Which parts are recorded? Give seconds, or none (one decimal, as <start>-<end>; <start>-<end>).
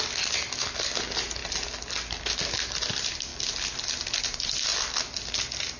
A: 0.0-5.8